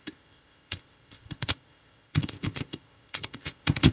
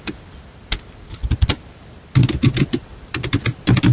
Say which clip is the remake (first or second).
first